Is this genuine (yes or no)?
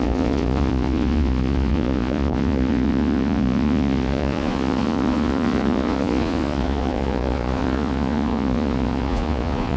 no